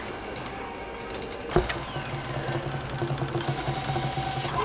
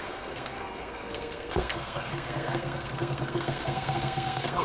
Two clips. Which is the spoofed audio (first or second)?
second